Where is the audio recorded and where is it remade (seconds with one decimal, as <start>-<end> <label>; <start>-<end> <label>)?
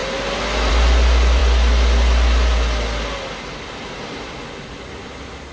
0.0-5.5 recorded